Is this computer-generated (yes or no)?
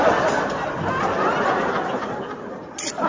no